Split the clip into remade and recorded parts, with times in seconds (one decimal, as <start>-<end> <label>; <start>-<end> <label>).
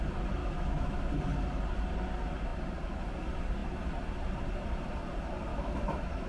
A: 0.0-0.4 recorded; 0.4-1.1 remade; 1.1-5.5 recorded; 5.5-6.3 remade